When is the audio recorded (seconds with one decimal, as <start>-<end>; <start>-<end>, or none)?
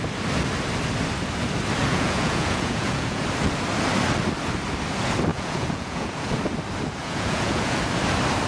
0.0-1.8; 3.2-5.3; 6.3-7.0; 7.8-8.5